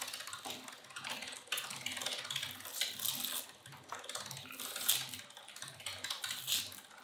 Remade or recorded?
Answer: recorded